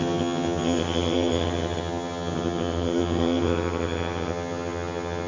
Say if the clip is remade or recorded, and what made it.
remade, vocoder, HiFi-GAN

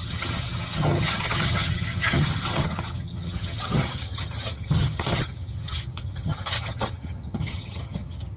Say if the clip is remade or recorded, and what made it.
remade, vocoder, HiFi-GAN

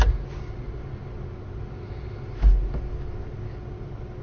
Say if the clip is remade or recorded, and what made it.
recorded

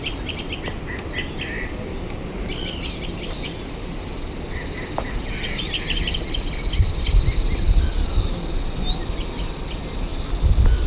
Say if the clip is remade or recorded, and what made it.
recorded